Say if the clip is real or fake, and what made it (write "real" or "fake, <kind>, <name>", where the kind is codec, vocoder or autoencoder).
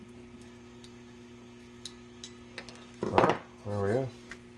real